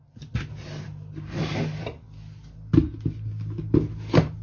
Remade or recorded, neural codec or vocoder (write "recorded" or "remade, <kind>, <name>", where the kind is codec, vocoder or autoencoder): recorded